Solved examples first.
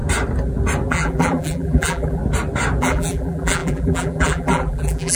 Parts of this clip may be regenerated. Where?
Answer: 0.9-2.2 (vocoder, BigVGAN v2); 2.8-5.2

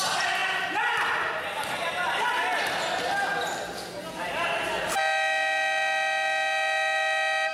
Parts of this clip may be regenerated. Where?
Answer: none